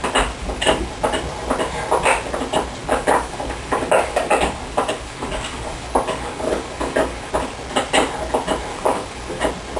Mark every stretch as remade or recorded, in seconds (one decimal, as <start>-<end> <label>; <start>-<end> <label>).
0.0-0.4 recorded; 0.4-0.9 remade; 0.9-2.8 recorded; 2.8-7.3 remade; 7.3-8.7 recorded; 8.7-9.4 remade; 9.4-9.8 recorded